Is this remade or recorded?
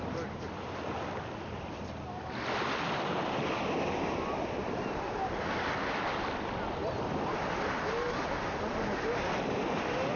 recorded